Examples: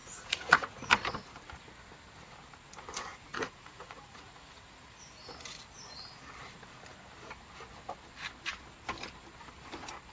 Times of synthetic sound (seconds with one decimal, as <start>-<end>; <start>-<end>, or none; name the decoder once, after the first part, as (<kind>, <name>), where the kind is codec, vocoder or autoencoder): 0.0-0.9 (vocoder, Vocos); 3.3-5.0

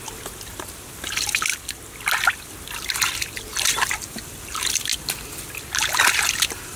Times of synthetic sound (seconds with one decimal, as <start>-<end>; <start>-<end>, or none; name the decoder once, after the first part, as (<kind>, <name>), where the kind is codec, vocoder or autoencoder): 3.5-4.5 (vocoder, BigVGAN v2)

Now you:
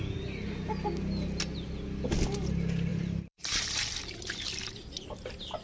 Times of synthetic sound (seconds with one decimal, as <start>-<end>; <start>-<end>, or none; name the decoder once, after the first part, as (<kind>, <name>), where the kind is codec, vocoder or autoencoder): 2.9-3.8 (vocoder, BigVGAN v2)